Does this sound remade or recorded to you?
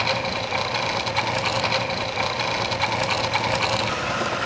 recorded